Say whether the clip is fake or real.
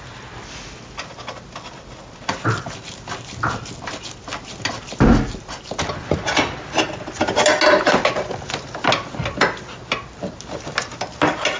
real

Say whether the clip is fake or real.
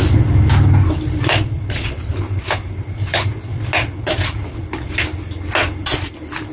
real